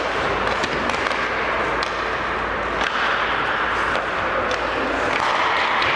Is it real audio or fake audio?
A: real